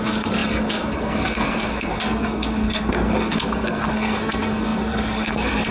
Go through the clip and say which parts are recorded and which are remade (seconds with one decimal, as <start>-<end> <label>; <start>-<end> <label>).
0.0-5.7 remade